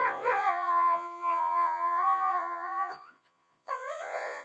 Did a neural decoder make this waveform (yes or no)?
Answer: yes